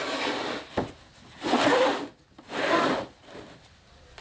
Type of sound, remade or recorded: recorded